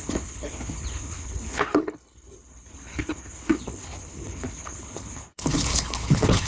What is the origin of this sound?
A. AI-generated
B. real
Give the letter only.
A